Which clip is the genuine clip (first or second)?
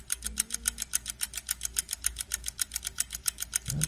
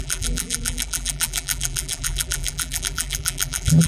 first